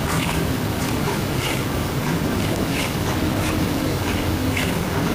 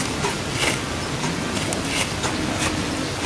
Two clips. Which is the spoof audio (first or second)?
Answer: first